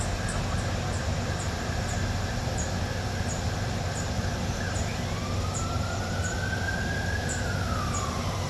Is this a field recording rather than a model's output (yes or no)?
yes